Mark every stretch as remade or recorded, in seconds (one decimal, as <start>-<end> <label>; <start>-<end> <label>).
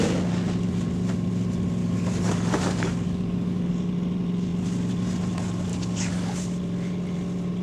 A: 0.0-1.8 recorded; 1.8-3.7 remade; 3.7-5.7 recorded; 5.7-6.3 remade; 6.3-7.6 recorded